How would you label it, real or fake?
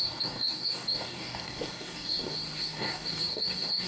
fake